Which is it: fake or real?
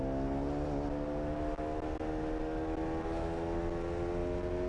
real